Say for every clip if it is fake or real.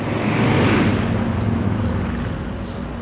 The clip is real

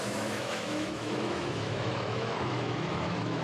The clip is fake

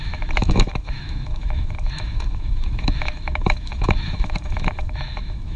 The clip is fake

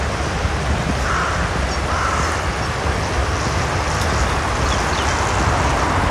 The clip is real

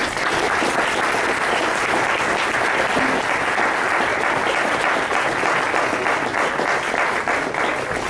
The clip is real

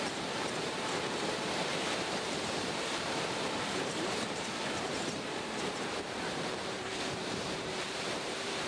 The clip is fake